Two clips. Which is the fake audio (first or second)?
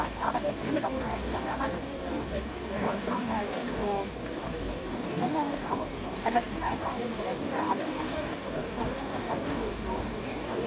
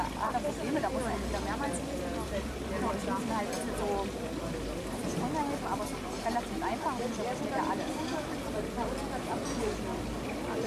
first